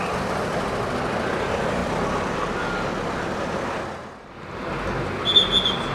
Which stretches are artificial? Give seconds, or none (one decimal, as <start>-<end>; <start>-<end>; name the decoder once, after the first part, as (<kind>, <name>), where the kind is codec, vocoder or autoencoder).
none